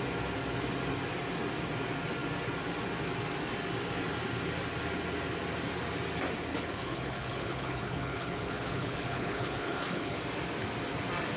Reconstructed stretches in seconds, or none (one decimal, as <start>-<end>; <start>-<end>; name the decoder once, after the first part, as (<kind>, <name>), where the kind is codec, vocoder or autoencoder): 6.5-10.2 (codec, HILCodec)